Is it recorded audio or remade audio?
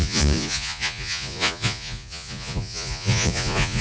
remade